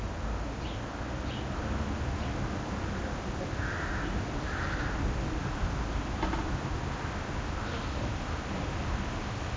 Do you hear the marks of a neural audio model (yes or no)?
no